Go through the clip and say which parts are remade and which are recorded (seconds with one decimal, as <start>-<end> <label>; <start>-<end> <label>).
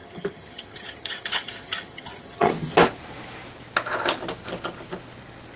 0.0-2.5 remade; 2.5-5.6 recorded